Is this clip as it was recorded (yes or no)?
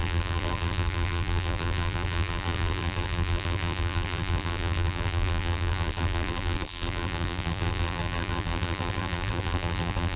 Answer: no